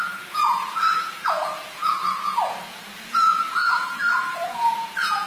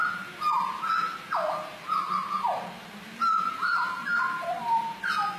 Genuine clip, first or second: second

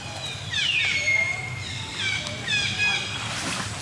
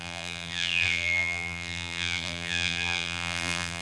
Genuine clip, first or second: first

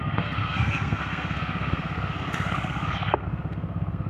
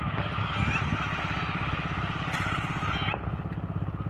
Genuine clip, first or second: second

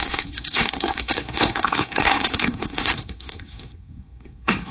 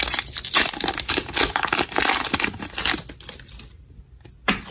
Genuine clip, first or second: second